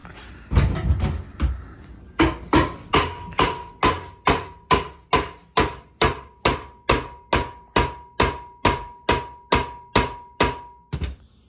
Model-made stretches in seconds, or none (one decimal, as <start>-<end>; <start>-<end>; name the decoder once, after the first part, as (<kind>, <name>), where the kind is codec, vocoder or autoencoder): none